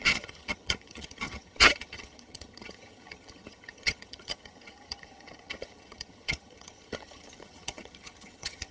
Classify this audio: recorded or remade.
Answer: remade